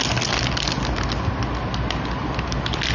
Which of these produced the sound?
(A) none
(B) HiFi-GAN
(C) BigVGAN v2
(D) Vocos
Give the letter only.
A